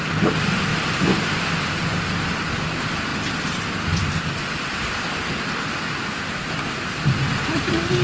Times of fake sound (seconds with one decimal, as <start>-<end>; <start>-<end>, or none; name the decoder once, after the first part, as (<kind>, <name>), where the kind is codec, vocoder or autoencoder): 0.7-1.7 (vocoder, BigVGAN v2)